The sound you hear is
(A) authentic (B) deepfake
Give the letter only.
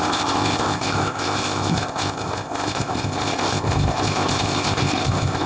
B